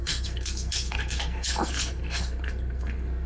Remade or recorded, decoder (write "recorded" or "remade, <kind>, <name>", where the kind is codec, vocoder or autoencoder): remade, codec, SNAC